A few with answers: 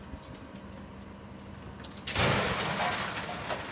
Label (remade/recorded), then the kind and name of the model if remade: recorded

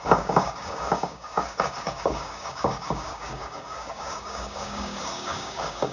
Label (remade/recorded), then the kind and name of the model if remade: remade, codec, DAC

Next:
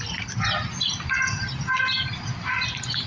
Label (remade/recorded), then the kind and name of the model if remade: recorded